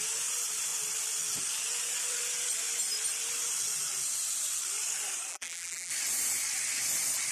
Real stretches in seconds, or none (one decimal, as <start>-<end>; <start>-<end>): 0.0-5.3; 5.9-7.3